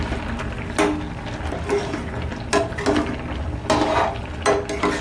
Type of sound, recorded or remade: recorded